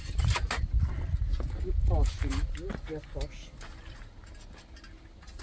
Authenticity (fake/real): real